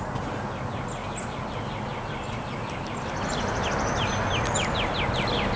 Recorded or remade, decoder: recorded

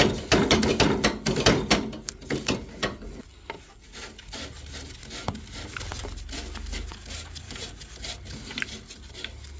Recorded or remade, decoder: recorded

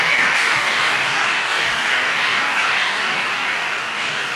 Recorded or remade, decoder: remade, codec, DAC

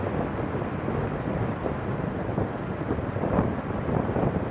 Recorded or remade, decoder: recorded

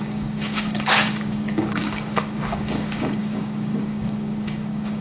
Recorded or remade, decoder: remade, codec, DAC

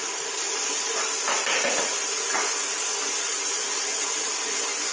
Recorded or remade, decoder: recorded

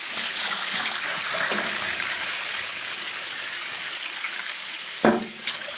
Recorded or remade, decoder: remade, codec, DAC